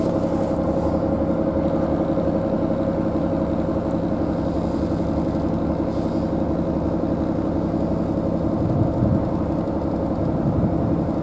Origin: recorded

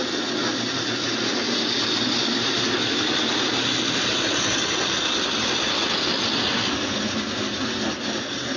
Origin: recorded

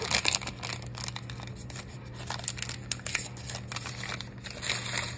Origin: recorded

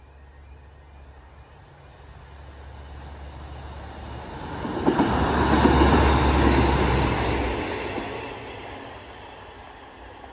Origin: recorded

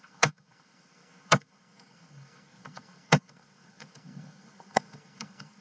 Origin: remade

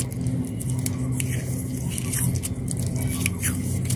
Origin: recorded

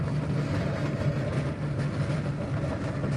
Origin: remade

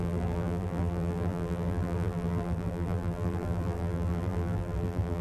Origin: remade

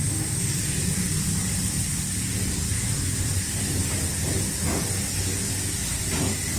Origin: recorded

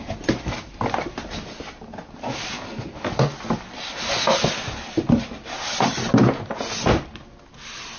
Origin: recorded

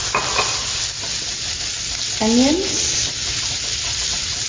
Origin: recorded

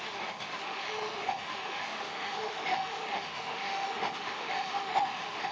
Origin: remade